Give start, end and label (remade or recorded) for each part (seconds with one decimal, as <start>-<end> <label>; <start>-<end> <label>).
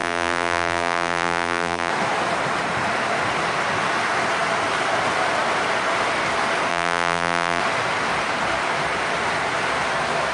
0.0-1.9 remade; 1.9-6.7 recorded; 6.7-7.6 remade; 7.6-10.3 recorded